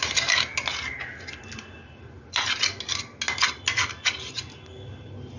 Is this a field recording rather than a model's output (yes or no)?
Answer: yes